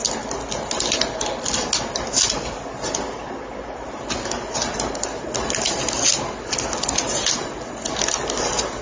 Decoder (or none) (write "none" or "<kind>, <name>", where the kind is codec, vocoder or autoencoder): none